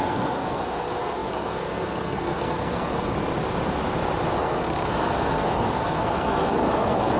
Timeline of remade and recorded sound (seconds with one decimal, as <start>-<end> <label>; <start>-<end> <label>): 0.0-3.1 remade; 3.1-4.4 recorded; 4.4-7.2 remade